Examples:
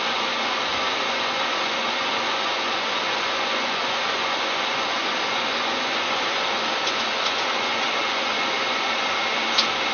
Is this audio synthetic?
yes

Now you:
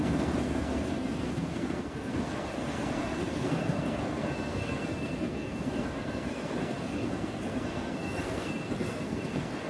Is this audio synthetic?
yes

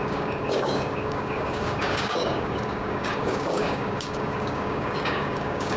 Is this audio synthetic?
yes